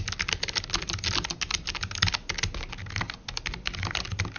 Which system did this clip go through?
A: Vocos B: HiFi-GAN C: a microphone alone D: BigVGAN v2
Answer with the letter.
C